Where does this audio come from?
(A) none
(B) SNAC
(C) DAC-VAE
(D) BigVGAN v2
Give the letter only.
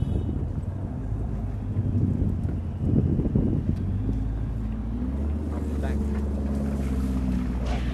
A